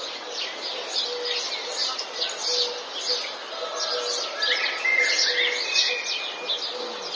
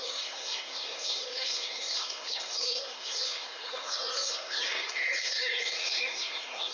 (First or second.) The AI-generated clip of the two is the second